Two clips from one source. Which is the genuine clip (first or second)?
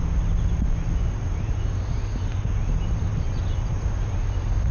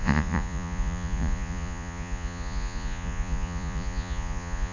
first